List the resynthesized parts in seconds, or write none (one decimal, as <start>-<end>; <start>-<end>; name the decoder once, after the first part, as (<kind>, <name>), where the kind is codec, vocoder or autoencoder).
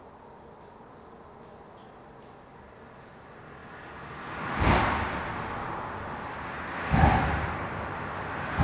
none